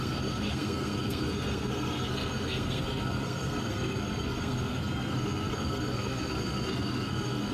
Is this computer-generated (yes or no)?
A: yes